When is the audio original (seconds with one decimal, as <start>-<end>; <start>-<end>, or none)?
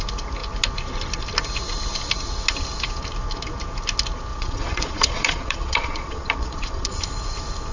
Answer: 0.0-4.3; 7.0-7.7